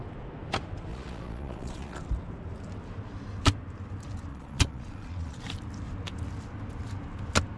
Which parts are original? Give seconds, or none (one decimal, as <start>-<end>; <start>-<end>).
0.0-0.9; 2.0-4.3; 5.4-7.6